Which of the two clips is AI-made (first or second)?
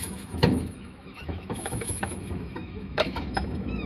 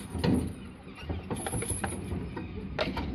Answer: first